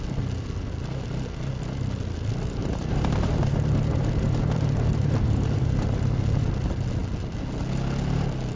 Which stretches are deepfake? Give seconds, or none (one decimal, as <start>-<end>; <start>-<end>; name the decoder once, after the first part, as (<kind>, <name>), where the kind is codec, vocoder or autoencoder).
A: 2.6-6.5 (vocoder, BigVGAN v2)